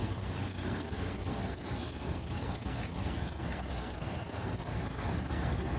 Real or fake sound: fake